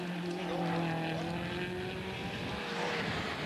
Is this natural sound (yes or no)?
yes